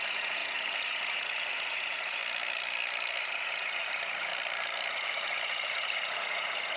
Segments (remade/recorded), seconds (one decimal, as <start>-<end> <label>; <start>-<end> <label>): 0.0-2.2 remade; 2.2-3.2 recorded; 3.2-4.3 remade; 4.3-4.9 recorded; 4.9-6.8 remade